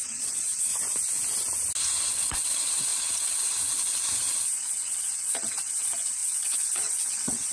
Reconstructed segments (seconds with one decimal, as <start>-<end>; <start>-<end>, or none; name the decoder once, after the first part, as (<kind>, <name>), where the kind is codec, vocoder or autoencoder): 0.0-0.7 (vocoder, WaveNeXt); 2.1-7.5